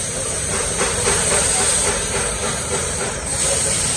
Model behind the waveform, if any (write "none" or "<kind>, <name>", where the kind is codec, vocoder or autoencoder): vocoder, BigVGAN v2